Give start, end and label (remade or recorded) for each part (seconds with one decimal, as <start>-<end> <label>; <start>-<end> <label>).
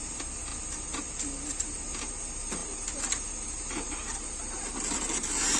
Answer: 0.0-5.6 recorded